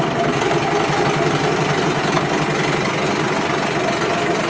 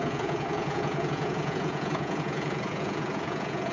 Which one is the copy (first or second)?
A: second